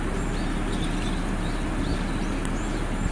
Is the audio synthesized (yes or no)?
no